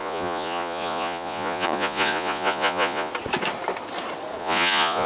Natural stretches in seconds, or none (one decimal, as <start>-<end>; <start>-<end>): 3.1-4.4